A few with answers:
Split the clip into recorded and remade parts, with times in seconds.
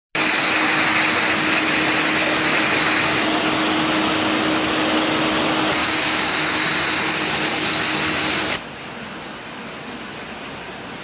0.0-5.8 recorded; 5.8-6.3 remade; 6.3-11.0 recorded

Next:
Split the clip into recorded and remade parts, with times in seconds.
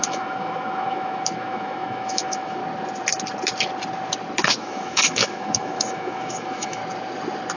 0.0-2.6 remade; 2.6-4.6 recorded; 4.6-6.8 remade; 6.8-7.6 recorded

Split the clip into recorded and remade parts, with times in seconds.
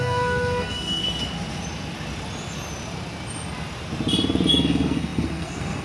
0.0-1.0 remade; 1.0-4.5 recorded; 4.5-5.8 remade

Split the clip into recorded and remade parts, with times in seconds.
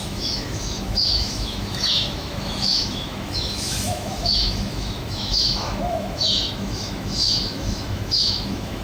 0.0-8.8 remade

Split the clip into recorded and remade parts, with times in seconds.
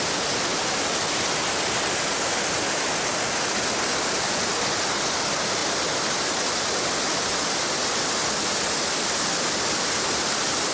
0.0-10.7 recorded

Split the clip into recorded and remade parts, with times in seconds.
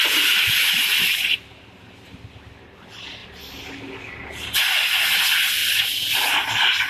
0.0-6.9 recorded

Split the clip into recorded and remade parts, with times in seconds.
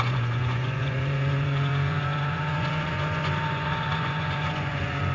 0.0-5.1 remade